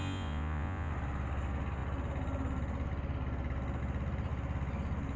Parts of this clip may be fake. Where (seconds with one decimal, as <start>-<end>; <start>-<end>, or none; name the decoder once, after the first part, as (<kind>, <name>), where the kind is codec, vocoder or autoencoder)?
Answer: 0.0-0.9 (vocoder, Vocos)